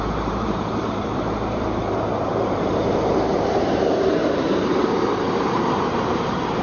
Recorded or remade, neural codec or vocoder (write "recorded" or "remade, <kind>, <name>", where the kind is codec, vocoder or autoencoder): remade, vocoder, BigVGAN v2